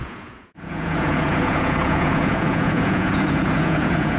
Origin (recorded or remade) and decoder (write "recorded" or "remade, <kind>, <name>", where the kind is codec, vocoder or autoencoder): remade, vocoder, Vocos